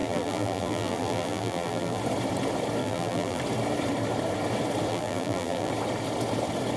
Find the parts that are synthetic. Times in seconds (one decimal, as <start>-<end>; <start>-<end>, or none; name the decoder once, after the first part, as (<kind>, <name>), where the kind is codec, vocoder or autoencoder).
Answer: 0.0-2.0 (vocoder, BigVGAN v2); 2.8-3.4; 4.9-5.7